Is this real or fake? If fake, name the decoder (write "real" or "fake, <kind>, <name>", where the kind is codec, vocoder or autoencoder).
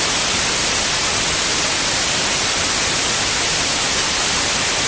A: real